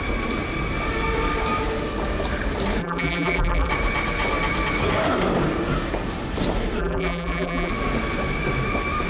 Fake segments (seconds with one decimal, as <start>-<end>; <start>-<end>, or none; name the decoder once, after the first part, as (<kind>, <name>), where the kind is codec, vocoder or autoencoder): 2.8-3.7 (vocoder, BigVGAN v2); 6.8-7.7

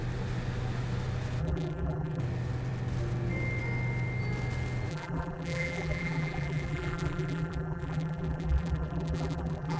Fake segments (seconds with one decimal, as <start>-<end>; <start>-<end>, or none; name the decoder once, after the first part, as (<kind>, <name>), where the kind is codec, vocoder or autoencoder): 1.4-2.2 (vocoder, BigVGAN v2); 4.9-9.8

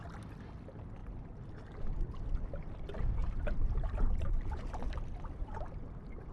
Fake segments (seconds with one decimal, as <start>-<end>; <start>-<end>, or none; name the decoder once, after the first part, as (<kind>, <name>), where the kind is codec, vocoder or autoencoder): 3.2-5.0 (vocoder, BigVGAN v2)

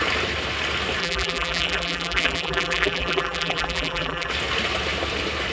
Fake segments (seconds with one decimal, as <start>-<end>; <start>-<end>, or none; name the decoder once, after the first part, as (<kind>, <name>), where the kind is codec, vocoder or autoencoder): 1.0-4.3 (vocoder, BigVGAN v2)

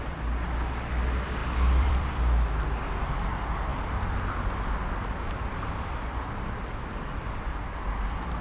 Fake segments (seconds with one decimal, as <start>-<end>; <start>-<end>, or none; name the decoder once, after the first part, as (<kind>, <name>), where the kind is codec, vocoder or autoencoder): 1.4-2.2 (vocoder, BigVGAN v2)

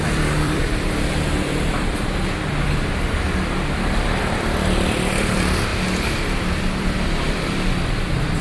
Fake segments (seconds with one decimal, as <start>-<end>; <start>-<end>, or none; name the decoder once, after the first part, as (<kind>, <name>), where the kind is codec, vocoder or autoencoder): 0.0-2.5 (vocoder, BigVGAN v2); 5.1-5.7; 6.5-8.4

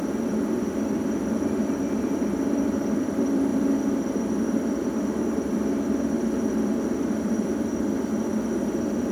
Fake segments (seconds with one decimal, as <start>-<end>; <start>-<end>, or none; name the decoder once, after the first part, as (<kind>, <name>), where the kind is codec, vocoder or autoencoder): 0.0-3.5 (vocoder, BigVGAN v2); 4.1-9.1

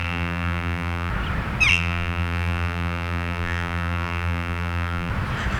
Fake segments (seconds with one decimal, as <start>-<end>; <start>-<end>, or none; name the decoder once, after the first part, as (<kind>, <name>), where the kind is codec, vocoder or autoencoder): 0.0-1.1 (vocoder, BigVGAN v2); 1.7-5.1